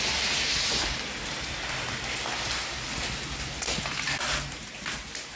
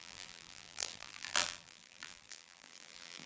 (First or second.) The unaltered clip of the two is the first